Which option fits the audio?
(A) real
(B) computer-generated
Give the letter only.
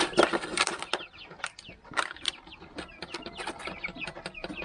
A